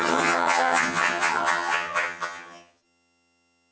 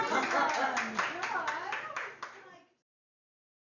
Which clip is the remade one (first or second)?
first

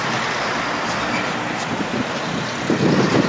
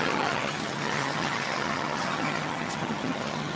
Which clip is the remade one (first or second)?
second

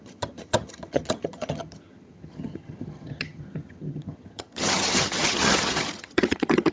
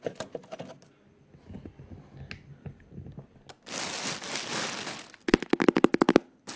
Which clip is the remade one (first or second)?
first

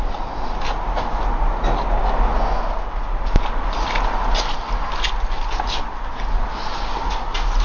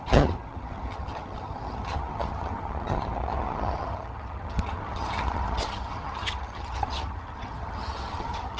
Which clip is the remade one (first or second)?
second